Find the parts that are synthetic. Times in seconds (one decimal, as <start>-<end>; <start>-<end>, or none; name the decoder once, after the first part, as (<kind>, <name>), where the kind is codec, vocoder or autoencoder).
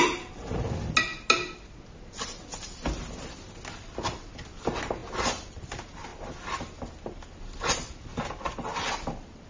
none